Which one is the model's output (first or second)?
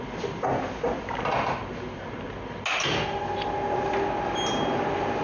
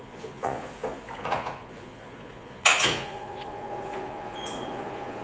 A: second